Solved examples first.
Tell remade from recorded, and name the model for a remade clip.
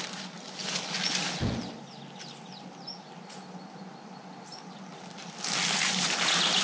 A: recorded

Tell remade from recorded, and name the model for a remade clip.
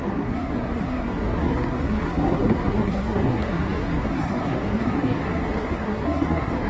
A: remade, codec, SNAC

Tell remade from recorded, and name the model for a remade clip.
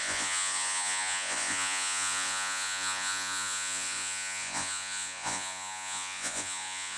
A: remade, vocoder, Vocos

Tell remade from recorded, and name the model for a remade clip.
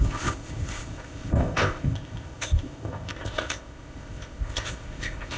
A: remade, codec, ZipCodec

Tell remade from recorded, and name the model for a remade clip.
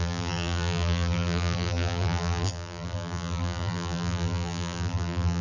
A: remade, vocoder, BigVGAN v2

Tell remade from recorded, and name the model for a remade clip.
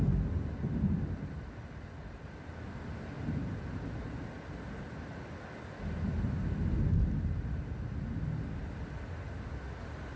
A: recorded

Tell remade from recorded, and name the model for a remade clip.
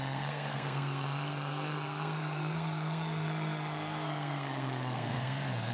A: remade, codec, SNAC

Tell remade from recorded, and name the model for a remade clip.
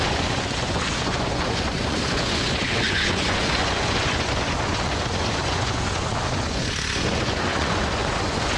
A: remade, vocoder, Vocos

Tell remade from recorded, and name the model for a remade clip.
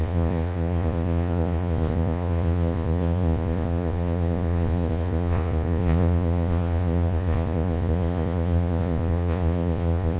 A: remade, vocoder, Vocos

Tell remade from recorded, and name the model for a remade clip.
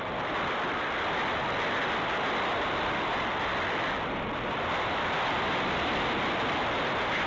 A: recorded